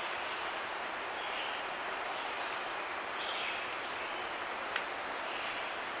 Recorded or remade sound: recorded